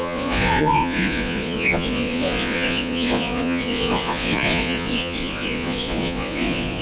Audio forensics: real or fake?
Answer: fake